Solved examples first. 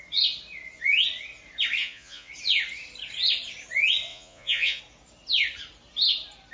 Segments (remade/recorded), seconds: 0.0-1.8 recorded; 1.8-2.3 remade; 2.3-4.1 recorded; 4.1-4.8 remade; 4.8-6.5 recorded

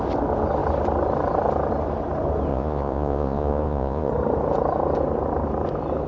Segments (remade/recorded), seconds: 0.0-2.5 recorded; 2.5-4.1 remade; 4.1-6.1 recorded

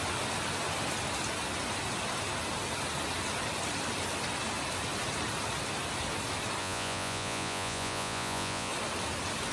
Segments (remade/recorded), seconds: 0.0-6.6 recorded; 6.6-8.7 remade; 8.7-9.5 recorded